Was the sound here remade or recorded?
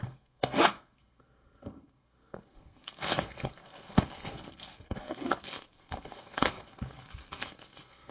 remade